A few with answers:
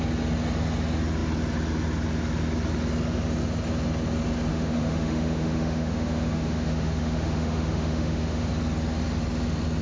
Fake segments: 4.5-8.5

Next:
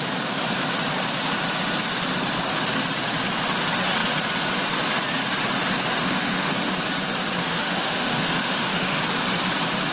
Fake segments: 6.0-6.5; 7.4-9.0

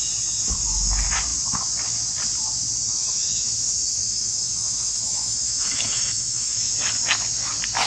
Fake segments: 2.8-6.7

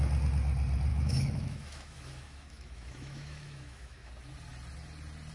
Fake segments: 0.9-4.1

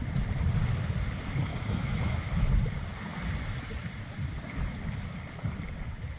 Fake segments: 1.5-2.5